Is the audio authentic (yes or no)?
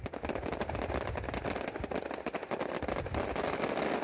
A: yes